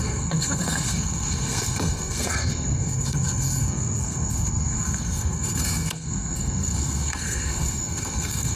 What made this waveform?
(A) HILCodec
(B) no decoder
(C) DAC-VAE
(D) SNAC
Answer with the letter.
D